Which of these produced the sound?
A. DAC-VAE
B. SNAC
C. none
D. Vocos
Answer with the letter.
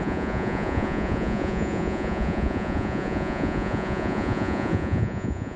D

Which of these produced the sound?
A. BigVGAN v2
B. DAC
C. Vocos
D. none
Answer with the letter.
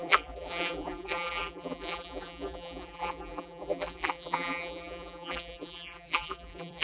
A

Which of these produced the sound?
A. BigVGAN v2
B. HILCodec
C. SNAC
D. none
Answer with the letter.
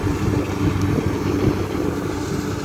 D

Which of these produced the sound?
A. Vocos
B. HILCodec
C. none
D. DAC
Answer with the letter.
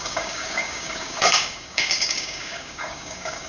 D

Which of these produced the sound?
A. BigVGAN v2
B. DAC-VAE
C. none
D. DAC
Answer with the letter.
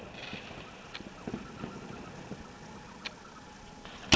C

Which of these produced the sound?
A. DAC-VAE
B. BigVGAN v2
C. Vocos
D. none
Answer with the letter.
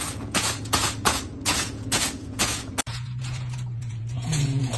C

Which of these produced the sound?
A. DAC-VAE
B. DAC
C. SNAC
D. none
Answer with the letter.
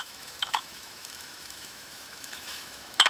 A